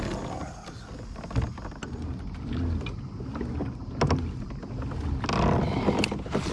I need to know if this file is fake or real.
real